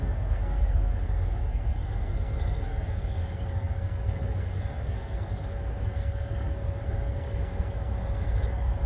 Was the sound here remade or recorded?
remade